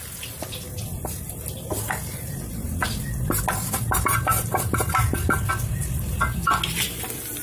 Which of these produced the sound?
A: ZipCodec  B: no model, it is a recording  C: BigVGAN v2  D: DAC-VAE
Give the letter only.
B